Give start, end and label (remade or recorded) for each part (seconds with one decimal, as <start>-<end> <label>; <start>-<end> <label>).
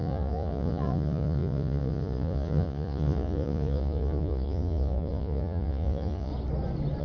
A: 0.0-6.3 remade; 6.3-7.0 recorded